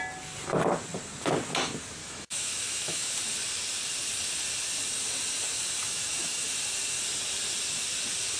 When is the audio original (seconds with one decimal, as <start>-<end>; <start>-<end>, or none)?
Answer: 0.0-2.0; 3.1-5.8; 6.5-8.4